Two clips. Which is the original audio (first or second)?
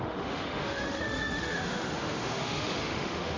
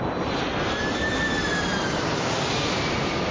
second